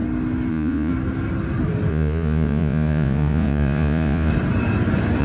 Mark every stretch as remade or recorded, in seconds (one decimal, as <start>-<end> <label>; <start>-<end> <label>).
0.0-0.5 recorded; 0.5-0.9 remade; 0.9-1.9 recorded; 1.9-4.3 remade; 4.3-5.2 recorded